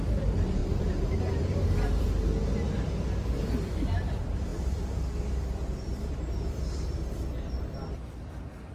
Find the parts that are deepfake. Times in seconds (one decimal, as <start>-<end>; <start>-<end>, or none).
none